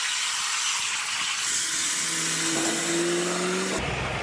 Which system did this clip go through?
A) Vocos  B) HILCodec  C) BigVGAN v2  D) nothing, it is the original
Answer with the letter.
D